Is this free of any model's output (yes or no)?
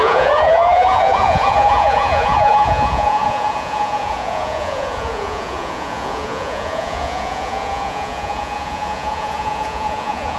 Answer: no